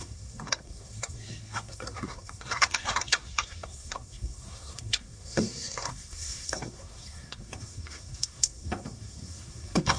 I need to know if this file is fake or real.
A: fake